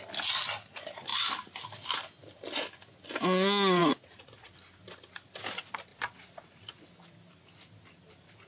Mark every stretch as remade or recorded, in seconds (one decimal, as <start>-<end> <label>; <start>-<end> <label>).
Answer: 0.0-3.8 recorded; 3.8-4.5 remade; 4.5-5.9 recorded; 5.9-6.9 remade; 6.9-8.5 recorded